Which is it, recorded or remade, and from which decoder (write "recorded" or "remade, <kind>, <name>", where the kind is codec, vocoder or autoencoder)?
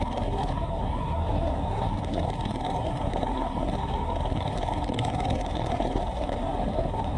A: remade, codec, SNAC